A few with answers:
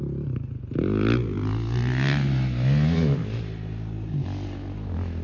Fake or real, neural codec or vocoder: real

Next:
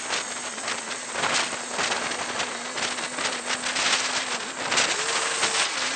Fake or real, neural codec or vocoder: real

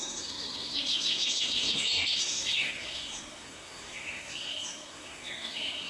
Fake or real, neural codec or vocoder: fake, codec, SNAC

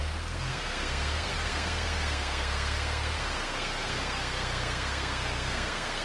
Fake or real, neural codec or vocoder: fake, codec, SNAC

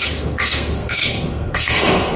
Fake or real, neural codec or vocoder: fake, codec, SNAC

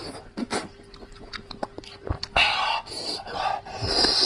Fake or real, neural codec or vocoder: real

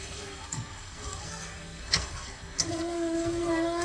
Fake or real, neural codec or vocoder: fake, codec, SNAC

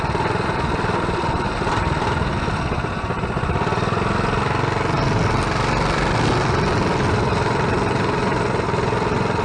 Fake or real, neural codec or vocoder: real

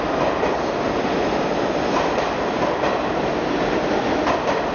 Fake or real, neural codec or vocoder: real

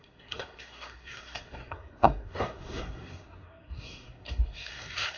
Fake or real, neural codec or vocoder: fake, codec, SNAC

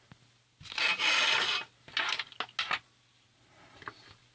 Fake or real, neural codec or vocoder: real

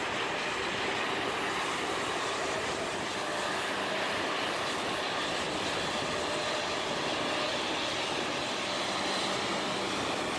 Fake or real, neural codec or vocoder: real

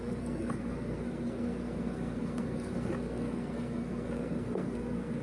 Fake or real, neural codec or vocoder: fake, codec, SNAC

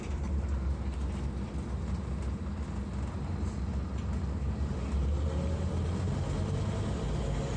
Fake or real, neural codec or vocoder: real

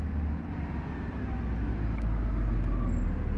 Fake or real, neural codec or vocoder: real